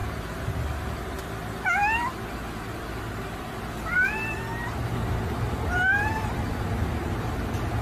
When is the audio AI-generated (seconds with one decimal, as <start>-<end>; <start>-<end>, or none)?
none